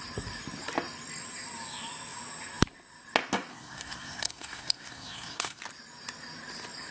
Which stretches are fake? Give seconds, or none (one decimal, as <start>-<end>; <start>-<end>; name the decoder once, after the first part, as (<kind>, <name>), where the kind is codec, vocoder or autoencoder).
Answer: 3.5-5.6 (codec, SNAC)